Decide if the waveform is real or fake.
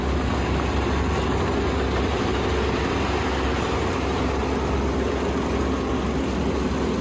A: real